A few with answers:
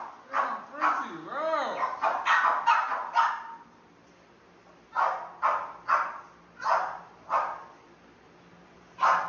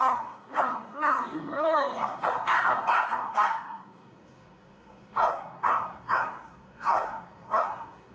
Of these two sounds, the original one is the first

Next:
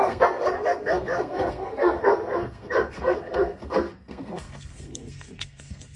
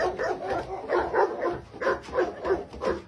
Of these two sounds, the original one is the second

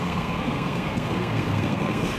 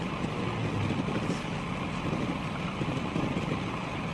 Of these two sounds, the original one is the second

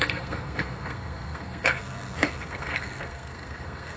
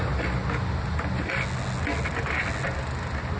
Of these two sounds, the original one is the second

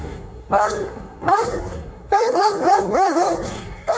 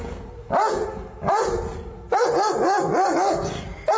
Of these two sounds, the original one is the second